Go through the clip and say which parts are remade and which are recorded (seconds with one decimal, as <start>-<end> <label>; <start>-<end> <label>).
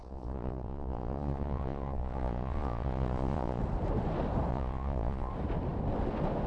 0.0-3.6 remade; 3.6-4.5 recorded; 4.5-5.3 remade; 5.3-6.5 recorded